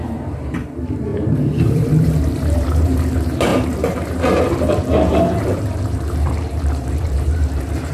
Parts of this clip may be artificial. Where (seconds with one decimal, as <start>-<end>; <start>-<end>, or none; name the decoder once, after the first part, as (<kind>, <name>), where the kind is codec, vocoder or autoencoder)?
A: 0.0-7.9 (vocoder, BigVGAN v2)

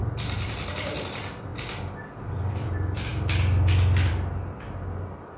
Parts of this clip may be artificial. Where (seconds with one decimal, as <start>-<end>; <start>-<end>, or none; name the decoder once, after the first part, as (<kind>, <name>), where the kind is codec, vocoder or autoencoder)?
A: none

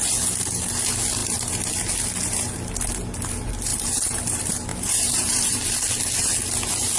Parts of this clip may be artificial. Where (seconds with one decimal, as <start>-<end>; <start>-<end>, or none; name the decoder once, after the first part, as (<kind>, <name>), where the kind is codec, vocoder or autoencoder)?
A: 3.7-4.2 (vocoder, BigVGAN v2); 4.7-5.9